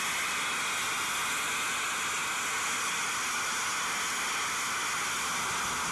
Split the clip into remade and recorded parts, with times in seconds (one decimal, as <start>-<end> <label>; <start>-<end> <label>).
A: 0.0-5.9 recorded